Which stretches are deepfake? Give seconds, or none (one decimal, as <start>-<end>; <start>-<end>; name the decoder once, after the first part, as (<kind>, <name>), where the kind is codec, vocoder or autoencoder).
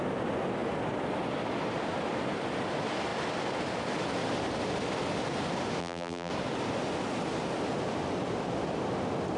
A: 5.8-6.3 (vocoder, BigVGAN v2)